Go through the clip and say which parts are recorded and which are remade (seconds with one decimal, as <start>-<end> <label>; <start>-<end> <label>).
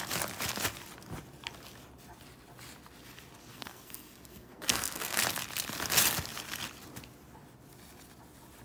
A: 0.0-3.5 recorded; 3.5-5.2 remade; 5.2-8.6 recorded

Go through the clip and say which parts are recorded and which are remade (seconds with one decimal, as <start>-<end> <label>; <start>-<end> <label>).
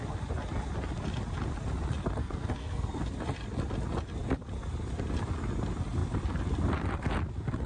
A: 0.0-2.2 recorded; 2.2-3.1 remade; 3.1-7.7 recorded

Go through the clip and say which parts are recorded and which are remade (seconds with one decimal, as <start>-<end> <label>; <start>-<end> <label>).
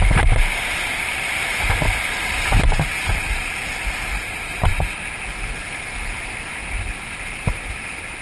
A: 0.0-8.2 recorded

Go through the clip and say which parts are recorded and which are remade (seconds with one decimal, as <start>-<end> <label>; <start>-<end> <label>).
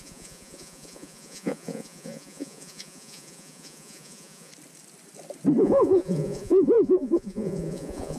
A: 0.0-4.5 remade; 4.5-5.6 recorded; 5.6-8.2 remade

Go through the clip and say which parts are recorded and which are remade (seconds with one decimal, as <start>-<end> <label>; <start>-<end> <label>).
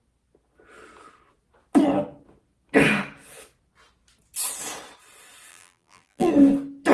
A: 0.0-5.5 recorded; 5.5-6.3 remade; 6.3-6.9 recorded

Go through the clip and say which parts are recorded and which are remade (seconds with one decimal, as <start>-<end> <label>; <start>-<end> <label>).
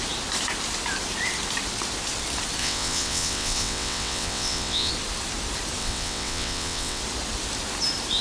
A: 0.0-2.6 recorded; 2.6-4.9 remade; 4.9-5.8 recorded; 5.8-7.0 remade; 7.0-8.2 recorded